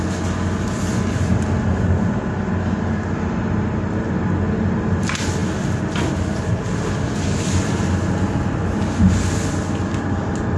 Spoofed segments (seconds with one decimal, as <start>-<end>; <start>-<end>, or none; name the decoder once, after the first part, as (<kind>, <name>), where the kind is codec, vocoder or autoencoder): none